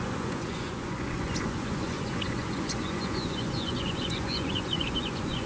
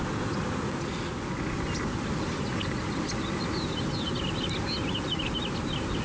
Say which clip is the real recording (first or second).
second